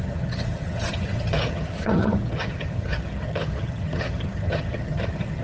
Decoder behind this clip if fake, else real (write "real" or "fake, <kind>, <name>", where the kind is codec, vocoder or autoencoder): fake, vocoder, HiFi-GAN